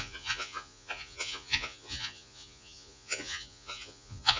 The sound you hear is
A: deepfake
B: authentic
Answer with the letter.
A